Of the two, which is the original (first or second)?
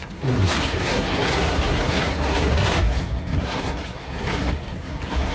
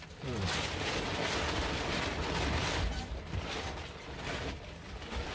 second